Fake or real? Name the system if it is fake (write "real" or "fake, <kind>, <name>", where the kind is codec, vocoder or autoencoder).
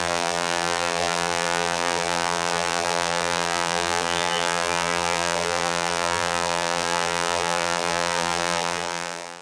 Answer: fake, vocoder, BigVGAN v2